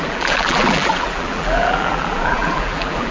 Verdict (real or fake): fake